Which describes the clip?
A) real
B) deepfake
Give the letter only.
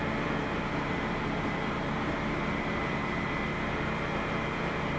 B